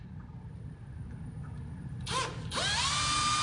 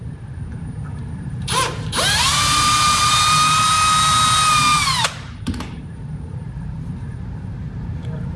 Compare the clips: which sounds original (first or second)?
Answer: first